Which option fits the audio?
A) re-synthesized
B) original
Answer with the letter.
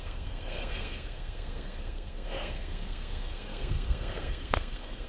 A